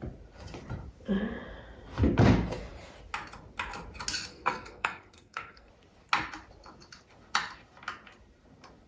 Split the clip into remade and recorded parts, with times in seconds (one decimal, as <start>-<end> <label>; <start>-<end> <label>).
0.0-4.3 recorded; 4.3-5.7 remade; 5.7-8.9 recorded